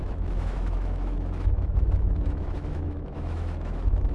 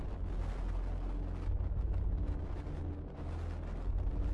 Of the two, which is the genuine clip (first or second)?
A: second